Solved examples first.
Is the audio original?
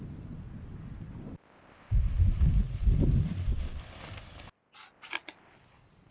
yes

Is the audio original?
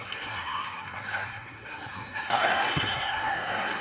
no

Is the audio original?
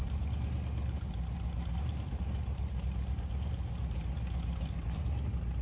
no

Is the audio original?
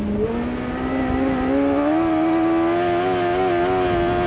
yes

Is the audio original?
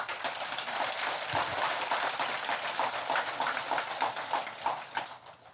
yes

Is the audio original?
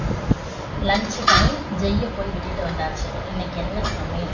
yes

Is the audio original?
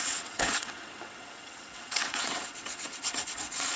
no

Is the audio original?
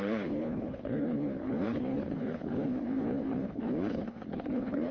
no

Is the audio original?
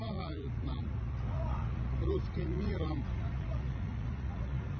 no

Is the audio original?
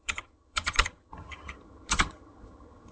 no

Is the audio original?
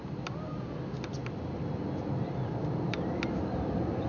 yes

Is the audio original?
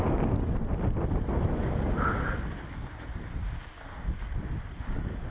yes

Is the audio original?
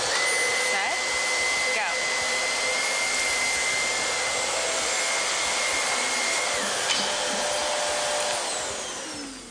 yes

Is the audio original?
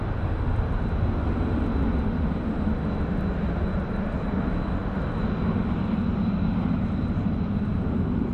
yes